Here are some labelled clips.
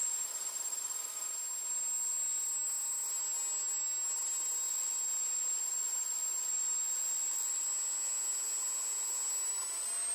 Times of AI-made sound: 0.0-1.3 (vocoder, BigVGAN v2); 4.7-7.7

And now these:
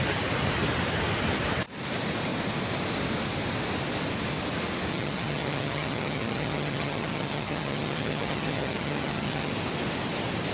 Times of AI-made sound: 4.9-9.5 (vocoder, HiFi-GAN)

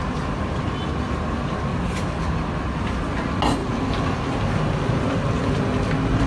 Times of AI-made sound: none

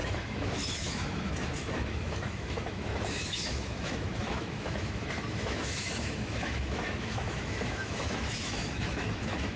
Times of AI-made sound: 0.0-9.6 (autoencoder, DAC-VAE)

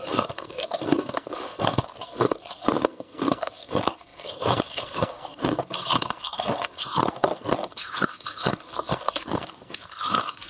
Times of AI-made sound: 0.0-10.5 (codec, SNAC)

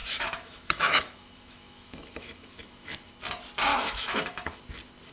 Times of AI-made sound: 0.0-3.1 (autoencoder, DAC-VAE); 3.7-4.6